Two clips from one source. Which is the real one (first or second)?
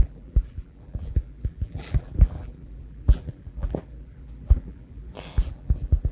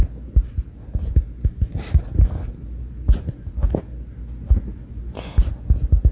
second